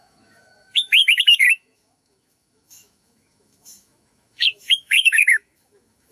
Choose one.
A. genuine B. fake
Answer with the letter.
B